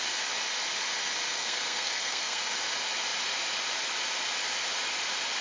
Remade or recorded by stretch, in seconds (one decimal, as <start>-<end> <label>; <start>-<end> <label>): 0.0-1.3 recorded; 1.3-2.4 remade; 2.4-5.4 recorded